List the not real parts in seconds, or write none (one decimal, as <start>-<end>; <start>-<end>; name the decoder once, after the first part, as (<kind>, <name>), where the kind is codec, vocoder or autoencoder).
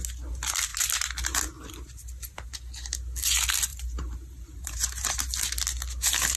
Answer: 3.7-4.8 (vocoder, BigVGAN v2)